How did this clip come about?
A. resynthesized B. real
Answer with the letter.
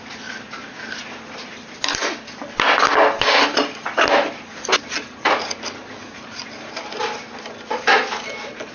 B